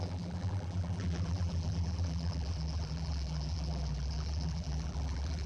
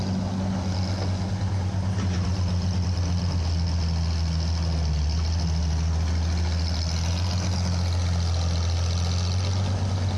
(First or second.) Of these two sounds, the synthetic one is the first